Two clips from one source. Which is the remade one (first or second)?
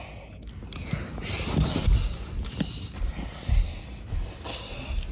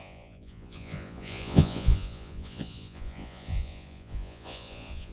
second